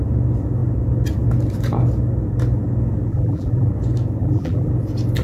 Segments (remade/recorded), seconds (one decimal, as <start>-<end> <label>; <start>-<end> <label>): 0.0-3.1 recorded; 3.1-3.7 remade; 3.7-4.2 recorded; 4.2-4.7 remade; 4.7-5.2 recorded